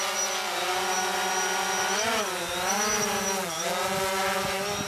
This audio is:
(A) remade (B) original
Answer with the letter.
B